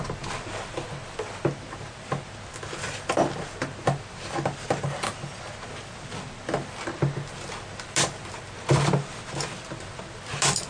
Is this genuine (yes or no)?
yes